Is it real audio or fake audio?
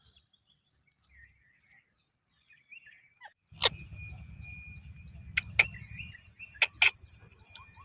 real